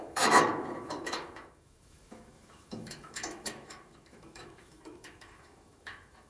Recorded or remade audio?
remade